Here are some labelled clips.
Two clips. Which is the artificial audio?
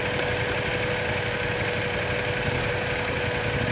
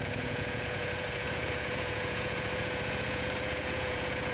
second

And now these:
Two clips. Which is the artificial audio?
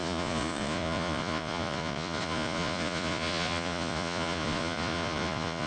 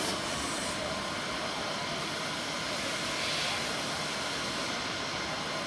first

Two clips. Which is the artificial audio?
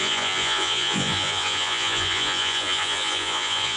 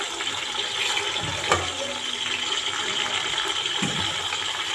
first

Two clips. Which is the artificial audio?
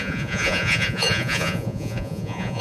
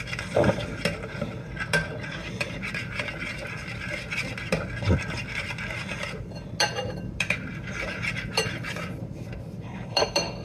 first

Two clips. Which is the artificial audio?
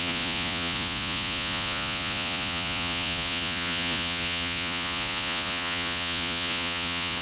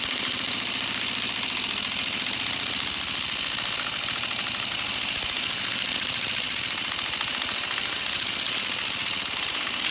first